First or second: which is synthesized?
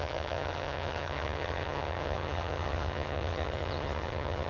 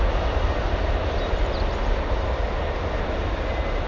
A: first